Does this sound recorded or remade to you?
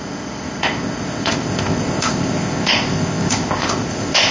remade